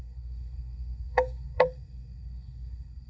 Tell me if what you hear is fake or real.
fake